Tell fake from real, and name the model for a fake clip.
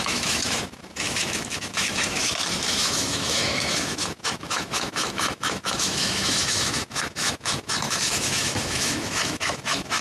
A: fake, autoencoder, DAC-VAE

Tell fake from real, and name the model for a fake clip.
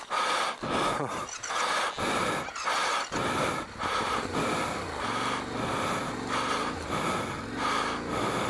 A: real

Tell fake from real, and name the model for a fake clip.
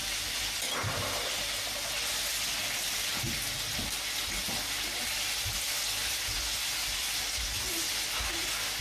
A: real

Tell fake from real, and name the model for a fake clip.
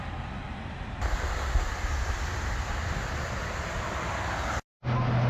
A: real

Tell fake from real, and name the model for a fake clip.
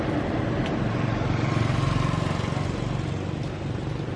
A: real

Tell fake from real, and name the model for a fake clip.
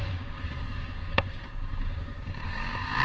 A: fake, codec, DAC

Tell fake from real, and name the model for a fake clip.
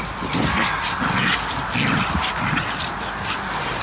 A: real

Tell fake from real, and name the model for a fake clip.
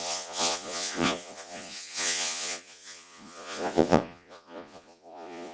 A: fake, vocoder, Vocos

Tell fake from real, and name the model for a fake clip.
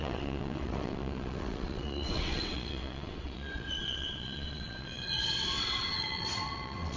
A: fake, vocoder, WaveNeXt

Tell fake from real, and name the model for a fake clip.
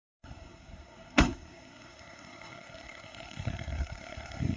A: fake, codec, SNAC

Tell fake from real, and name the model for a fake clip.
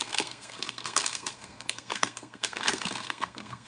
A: fake, codec, SNAC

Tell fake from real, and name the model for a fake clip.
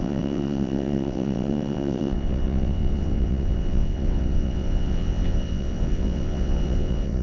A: fake, vocoder, WaveNeXt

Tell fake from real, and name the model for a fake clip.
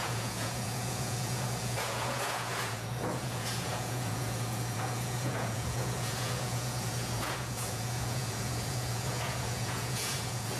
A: fake, vocoder, Vocos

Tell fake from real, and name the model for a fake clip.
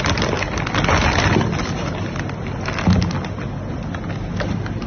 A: real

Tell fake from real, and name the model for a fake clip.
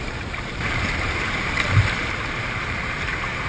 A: fake, vocoder, BigVGAN v2